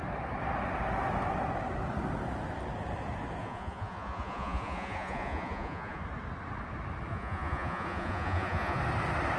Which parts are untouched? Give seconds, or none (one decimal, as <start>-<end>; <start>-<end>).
0.0-3.4; 6.0-7.1; 8.8-9.4